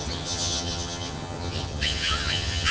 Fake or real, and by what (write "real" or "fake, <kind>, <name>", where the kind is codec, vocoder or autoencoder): fake, vocoder, HiFi-GAN